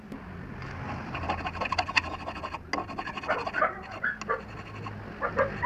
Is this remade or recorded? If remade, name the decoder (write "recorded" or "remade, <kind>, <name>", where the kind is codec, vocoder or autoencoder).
recorded